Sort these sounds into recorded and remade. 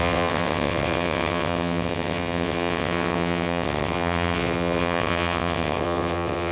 remade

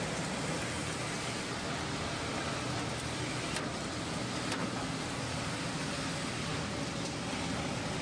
recorded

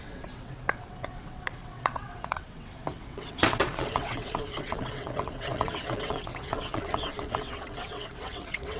remade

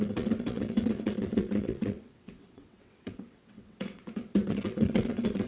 remade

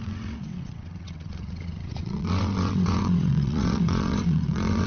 remade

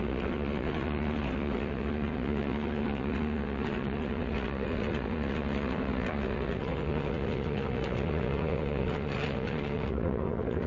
remade